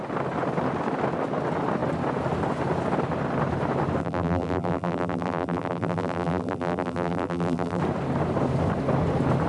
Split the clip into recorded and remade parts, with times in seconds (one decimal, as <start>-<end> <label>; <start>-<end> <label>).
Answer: 0.0-4.0 recorded; 4.0-7.8 remade; 7.8-9.5 recorded